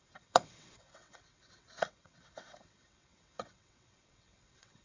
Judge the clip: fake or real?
fake